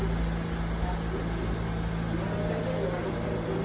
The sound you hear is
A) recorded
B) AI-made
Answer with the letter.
A